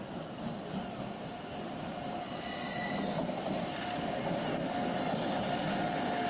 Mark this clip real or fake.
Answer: real